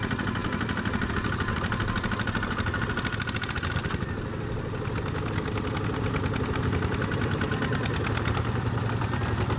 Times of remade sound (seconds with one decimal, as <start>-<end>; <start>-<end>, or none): none